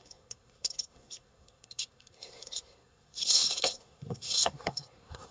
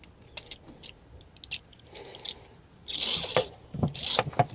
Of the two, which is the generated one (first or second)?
first